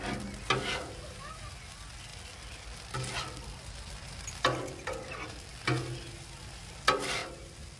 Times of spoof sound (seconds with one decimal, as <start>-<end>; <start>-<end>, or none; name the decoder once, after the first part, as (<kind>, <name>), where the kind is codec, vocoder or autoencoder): none